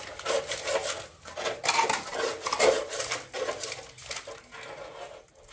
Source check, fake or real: real